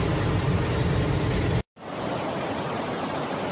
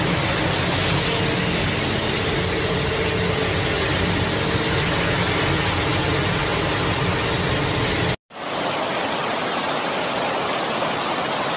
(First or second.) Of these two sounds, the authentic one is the second